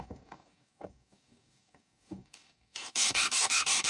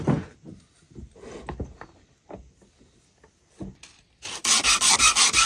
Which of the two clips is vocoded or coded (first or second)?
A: first